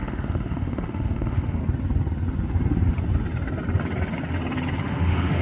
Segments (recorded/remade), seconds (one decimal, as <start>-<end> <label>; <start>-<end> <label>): 0.0-1.6 remade; 1.6-4.8 recorded; 4.8-5.4 remade